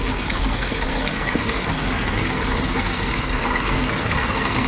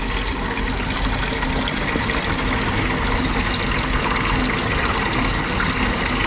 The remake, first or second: first